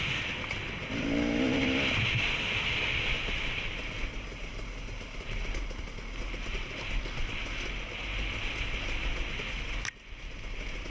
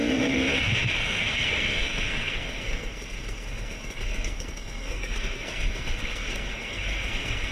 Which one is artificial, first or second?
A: second